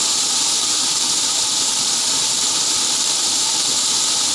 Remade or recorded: recorded